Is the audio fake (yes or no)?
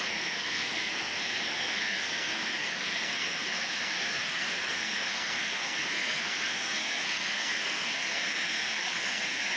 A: yes